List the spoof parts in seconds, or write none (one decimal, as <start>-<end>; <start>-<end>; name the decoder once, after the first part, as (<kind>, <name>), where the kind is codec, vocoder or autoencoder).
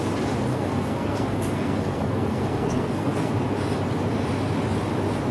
0.5-3.3 (codec, SNAC)